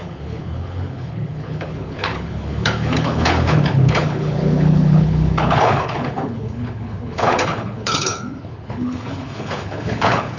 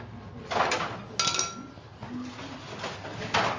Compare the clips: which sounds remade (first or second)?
first